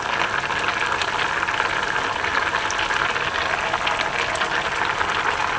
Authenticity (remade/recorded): recorded